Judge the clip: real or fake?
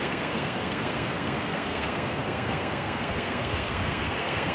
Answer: fake